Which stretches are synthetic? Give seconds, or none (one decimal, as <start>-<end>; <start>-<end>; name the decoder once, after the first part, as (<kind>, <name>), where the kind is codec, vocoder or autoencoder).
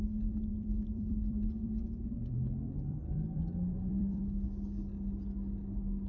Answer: 0.5-4.2 (vocoder, BigVGAN v2)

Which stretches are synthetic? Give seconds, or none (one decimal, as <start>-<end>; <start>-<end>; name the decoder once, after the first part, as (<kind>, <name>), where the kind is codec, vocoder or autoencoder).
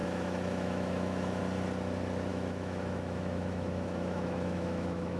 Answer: 0.0-1.4 (autoencoder, DAC-VAE); 2.3-5.2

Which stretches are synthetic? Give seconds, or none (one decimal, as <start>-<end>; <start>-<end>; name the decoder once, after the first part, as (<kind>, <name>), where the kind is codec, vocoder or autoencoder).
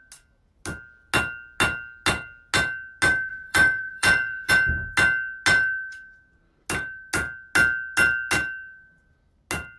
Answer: 3.3-4.5 (vocoder, Vocos)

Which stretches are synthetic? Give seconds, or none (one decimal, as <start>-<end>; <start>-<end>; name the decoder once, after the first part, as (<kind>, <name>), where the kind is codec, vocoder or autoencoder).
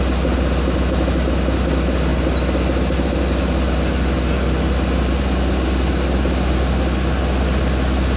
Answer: none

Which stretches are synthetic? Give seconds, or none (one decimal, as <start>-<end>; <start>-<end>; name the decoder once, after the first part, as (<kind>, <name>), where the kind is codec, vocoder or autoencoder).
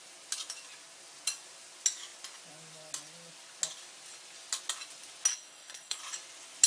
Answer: 5.3-6.0 (codec, SNAC)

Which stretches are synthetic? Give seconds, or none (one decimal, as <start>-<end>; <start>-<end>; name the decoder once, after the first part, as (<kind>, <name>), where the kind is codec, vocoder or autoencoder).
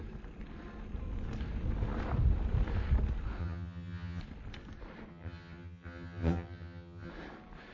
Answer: 3.4-4.2 (vocoder, HiFi-GAN); 5.1-7.1